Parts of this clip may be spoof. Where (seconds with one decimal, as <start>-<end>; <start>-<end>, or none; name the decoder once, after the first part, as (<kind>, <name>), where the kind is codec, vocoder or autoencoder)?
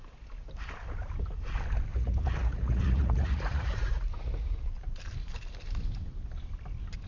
1.9-4.7 (vocoder, Vocos)